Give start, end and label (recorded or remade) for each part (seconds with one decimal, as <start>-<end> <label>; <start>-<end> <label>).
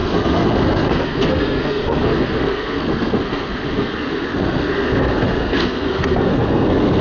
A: 0.0-7.0 remade